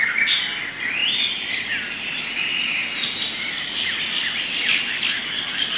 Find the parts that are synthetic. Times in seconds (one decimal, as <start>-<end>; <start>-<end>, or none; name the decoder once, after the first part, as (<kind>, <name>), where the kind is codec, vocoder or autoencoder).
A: 4.7-5.2 (vocoder, BigVGAN v2)